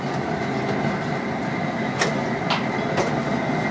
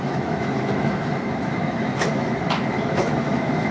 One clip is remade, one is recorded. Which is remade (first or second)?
second